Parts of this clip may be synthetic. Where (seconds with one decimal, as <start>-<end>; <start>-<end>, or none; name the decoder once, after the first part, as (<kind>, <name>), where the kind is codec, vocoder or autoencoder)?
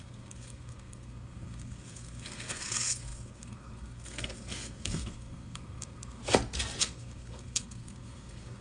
0.0-6.2 (codec, SNAC); 6.8-8.6